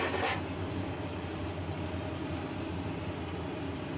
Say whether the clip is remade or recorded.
recorded